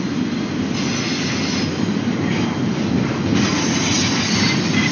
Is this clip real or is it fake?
real